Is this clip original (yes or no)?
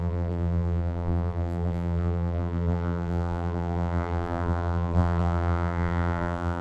no